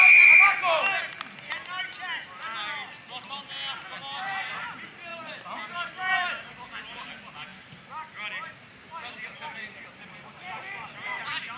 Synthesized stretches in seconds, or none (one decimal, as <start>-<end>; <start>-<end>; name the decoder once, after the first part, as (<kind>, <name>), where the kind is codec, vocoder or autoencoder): 4.5-5.1 (vocoder, BigVGAN v2); 6.8-7.5; 8.5-11.6